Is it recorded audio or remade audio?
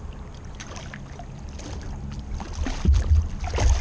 recorded